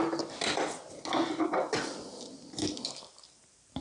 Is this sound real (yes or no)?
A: yes